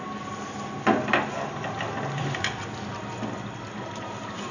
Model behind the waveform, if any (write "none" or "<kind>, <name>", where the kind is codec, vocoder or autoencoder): none